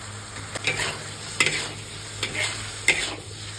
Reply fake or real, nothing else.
real